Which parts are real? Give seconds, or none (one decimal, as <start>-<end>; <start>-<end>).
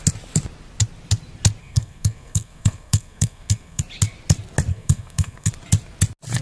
0.0-1.6; 3.8-4.7; 5.5-6.4